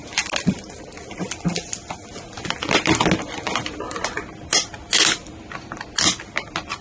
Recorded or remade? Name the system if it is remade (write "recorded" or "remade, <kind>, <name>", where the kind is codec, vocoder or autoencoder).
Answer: recorded